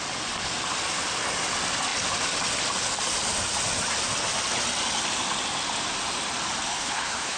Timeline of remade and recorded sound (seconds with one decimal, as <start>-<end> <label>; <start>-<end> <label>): 0.0-6.7 recorded; 6.7-7.4 remade